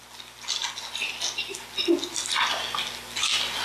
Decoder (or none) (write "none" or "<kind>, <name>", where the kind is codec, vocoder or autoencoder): none